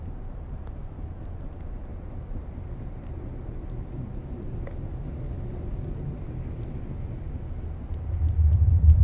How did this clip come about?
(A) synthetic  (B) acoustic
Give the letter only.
B